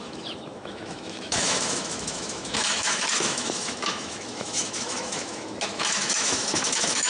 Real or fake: fake